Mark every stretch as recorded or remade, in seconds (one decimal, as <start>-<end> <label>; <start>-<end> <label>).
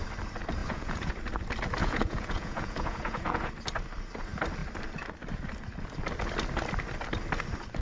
0.0-0.6 recorded; 0.6-1.1 remade; 1.1-1.8 recorded; 1.8-3.5 remade; 3.5-7.8 recorded